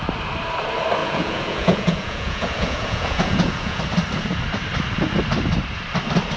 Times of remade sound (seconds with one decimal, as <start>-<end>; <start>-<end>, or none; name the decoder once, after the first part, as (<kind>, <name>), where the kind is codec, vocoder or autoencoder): 1.0-3.8 (vocoder, Vocos)